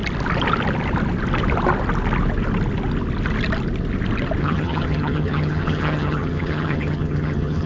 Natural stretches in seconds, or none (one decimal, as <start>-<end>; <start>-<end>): 0.0-4.4